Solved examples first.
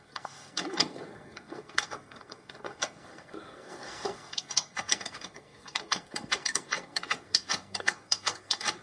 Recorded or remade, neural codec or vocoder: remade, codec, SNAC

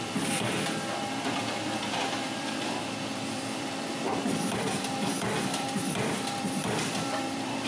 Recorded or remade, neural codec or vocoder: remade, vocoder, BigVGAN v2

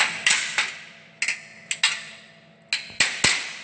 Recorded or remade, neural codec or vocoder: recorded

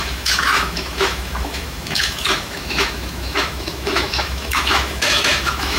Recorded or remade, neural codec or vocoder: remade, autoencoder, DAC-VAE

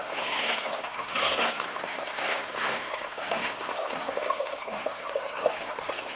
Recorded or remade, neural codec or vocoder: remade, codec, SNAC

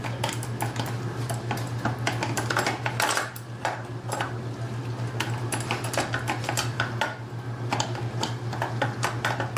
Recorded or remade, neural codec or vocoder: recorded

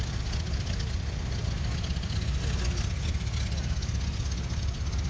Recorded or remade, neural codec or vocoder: recorded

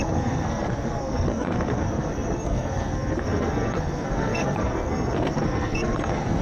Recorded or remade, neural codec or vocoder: remade, codec, SNAC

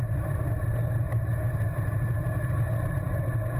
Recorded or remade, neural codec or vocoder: remade, vocoder, BigVGAN v2